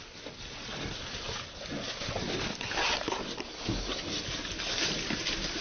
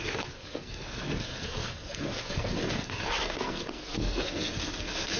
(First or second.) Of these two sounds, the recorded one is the first